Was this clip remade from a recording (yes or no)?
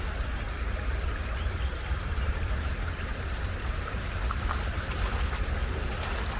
yes